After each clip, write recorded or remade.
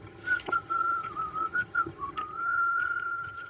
remade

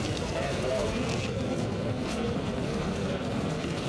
remade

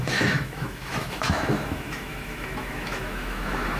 remade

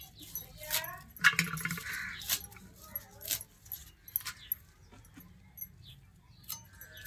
recorded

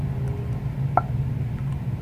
recorded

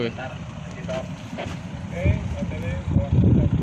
recorded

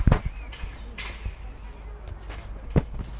recorded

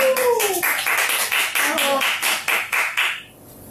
recorded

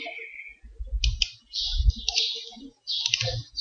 recorded